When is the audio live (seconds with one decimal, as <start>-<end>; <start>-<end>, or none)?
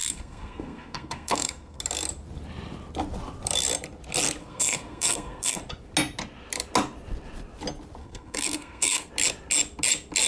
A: 1.8-4.4; 5.6-8.0; 9.1-10.3